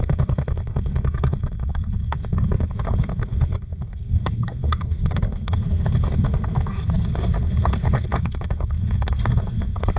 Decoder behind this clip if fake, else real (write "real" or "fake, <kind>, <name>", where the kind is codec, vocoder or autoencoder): fake, codec, SNAC